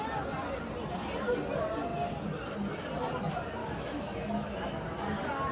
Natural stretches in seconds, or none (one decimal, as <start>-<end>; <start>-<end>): 0.0-3.6; 4.8-5.5